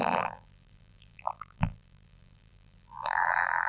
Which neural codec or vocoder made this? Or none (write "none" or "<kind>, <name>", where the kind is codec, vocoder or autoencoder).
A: vocoder, BigVGAN v2